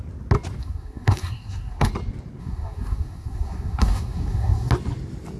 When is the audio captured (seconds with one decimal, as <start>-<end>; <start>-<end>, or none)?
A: 0.0-0.6; 1.9-2.4; 4.7-5.4